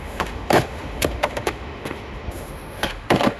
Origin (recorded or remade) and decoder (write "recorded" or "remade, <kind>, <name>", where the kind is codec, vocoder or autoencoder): remade, autoencoder, DAC-VAE